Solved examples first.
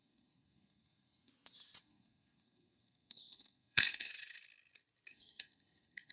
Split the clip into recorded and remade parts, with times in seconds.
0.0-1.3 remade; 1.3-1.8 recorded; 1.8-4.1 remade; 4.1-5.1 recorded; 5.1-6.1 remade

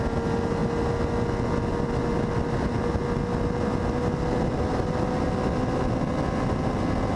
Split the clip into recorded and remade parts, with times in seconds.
0.0-7.2 recorded

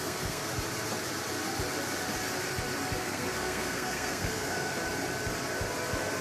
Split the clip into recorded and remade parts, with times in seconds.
0.0-0.5 remade; 0.5-3.0 recorded; 3.0-4.7 remade; 4.7-6.2 recorded

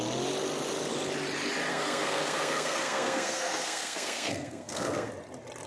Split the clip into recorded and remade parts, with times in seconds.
0.0-1.7 recorded; 1.7-5.1 remade; 5.1-5.7 recorded

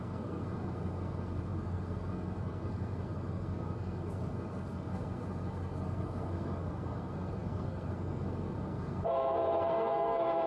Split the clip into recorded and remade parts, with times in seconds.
0.0-10.5 remade

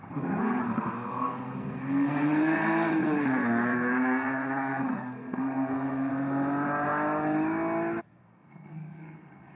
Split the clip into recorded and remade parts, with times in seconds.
0.0-6.1 remade; 6.1-8.0 recorded; 8.0-9.6 remade